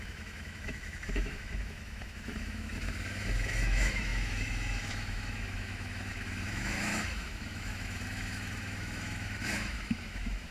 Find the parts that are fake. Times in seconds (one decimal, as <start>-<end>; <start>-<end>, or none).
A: 0.0-10.5